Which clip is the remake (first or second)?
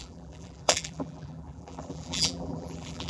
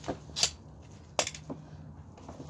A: first